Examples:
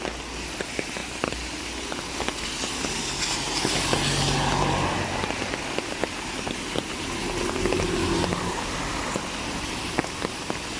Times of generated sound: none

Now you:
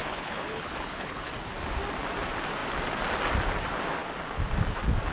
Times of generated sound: 0.0-1.3

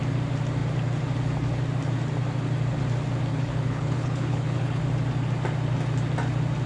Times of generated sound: 3.3-4.8

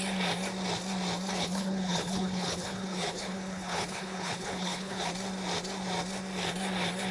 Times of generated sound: 1.3-5.1

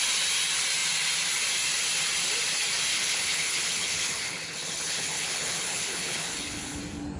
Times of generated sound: 2.9-6.8

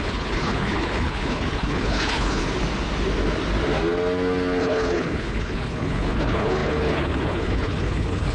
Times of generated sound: 0.0-2.4; 4.6-8.3